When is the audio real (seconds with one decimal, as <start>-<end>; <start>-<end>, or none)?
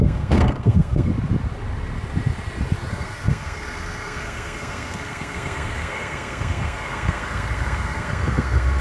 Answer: 1.1-2.9